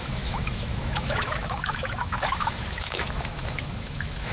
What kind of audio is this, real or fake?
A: fake